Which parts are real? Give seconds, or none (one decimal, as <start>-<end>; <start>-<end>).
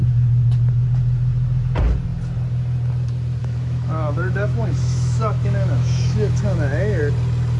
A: 0.0-3.4; 7.0-7.6